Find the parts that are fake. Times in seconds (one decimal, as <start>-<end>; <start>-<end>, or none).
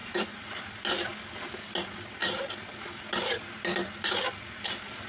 0.0-0.6